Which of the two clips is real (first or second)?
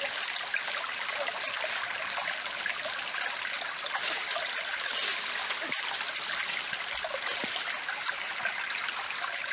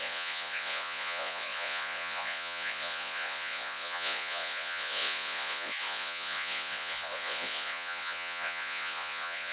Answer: first